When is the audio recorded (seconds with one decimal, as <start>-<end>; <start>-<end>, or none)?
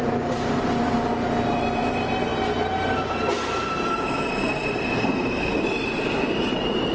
none